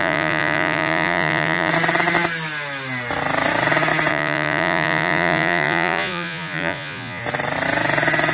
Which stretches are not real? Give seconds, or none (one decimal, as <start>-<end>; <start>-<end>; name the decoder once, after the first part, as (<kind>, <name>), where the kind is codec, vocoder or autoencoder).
0.0-1.7 (vocoder, Vocos); 4.1-7.2